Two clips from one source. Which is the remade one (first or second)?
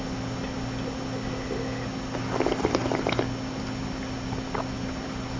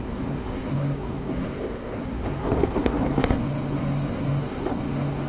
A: second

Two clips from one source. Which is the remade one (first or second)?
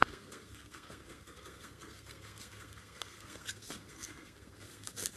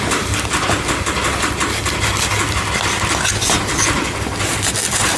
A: first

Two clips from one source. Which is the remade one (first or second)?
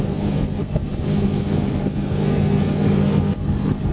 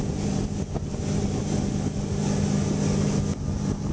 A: first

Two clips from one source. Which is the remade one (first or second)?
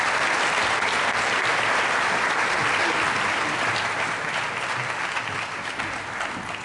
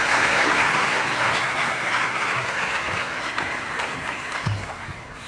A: second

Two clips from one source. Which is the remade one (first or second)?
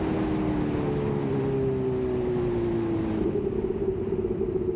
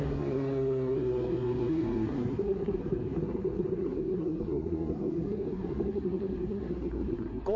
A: second